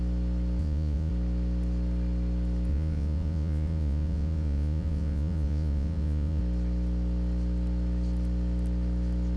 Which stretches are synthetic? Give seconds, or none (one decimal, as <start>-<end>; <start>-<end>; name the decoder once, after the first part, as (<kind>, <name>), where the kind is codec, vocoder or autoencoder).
0.6-1.1 (vocoder, Vocos); 2.7-6.4